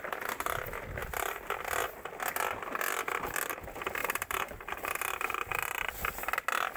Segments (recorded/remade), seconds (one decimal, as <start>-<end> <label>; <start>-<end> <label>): 0.0-1.0 recorded; 1.0-1.6 remade; 1.6-4.0 recorded; 4.0-5.0 remade; 5.0-6.8 recorded